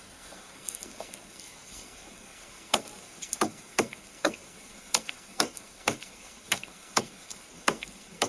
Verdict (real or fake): fake